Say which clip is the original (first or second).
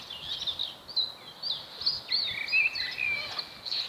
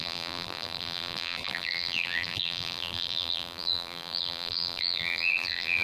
first